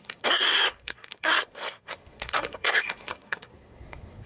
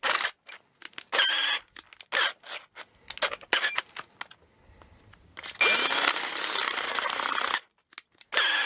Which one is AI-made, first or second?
first